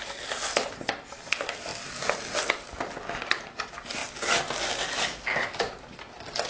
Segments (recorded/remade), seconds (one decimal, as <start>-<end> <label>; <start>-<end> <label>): 0.0-6.5 recorded